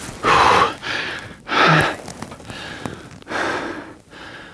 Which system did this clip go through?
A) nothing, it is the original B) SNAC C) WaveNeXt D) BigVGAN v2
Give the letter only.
A